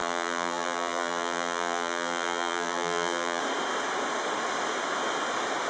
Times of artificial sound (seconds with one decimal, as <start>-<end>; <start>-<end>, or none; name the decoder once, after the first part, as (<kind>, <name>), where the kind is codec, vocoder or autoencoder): 0.0-3.4 (vocoder, BigVGAN v2)